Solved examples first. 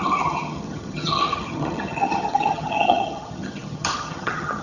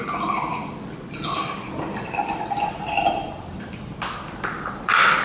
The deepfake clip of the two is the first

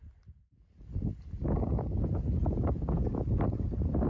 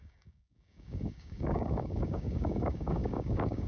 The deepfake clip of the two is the second